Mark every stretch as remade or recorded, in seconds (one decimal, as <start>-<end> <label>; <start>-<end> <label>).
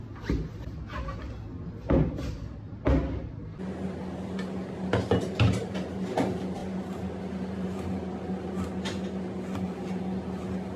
0.0-10.8 recorded